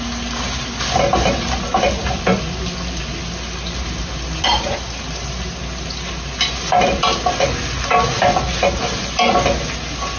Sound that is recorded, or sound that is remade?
recorded